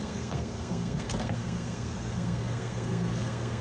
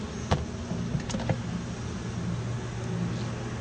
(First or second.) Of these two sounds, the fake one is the first